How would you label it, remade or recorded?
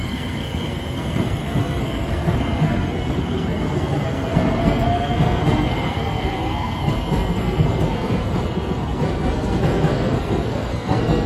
remade